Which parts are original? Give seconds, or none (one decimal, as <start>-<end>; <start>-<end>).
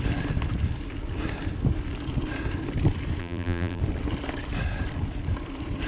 0.0-3.2; 3.8-5.9